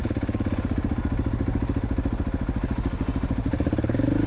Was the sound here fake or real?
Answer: real